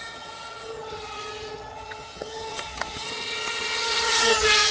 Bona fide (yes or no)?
no